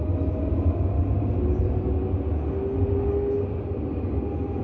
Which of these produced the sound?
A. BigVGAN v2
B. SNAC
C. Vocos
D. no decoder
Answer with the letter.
D